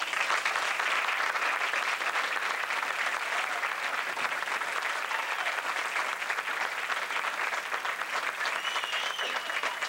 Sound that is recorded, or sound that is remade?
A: recorded